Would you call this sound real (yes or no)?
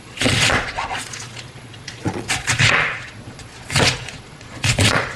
no